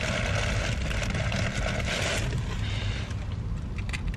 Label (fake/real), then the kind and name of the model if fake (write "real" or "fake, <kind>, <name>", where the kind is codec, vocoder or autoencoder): real